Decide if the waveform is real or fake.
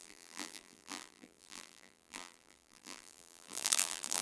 fake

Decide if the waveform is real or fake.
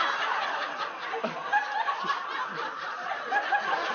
real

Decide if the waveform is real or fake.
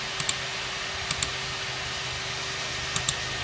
real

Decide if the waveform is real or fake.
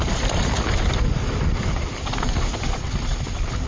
fake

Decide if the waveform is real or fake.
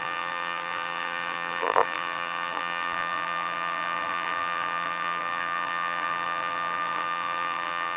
fake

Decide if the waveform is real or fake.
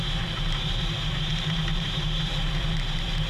fake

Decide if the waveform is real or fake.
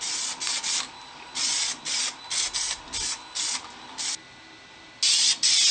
real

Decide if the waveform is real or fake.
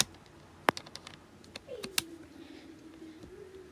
real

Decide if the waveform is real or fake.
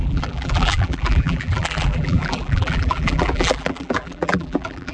fake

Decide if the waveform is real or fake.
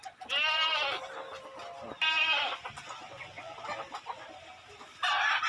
real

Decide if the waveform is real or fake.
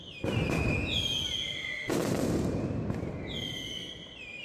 real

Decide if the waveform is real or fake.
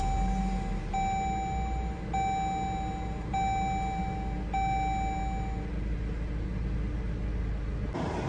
real